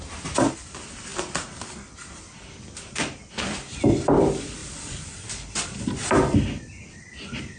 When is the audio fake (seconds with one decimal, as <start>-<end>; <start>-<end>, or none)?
4.6-5.9

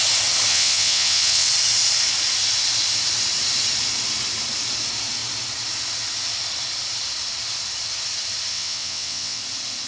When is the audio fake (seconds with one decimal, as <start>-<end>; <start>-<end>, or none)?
0.5-1.5; 8.5-9.4

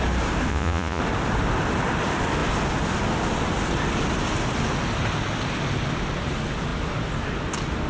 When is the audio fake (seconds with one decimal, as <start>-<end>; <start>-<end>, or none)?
0.5-1.0